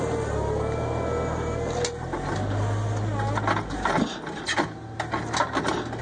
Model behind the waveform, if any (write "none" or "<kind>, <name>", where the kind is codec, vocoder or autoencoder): none